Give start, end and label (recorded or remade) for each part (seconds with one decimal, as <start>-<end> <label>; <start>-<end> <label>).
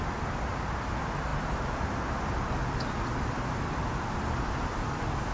0.0-5.3 recorded